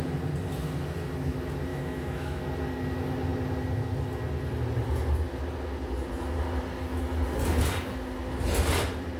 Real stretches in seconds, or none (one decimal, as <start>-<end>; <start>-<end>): 0.0-1.7; 2.4-9.2